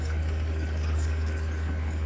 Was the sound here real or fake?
fake